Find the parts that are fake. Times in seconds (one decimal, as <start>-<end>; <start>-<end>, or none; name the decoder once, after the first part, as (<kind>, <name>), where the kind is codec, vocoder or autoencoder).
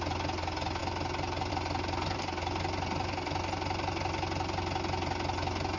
none